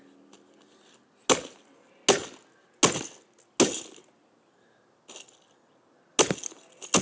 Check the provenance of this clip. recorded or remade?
recorded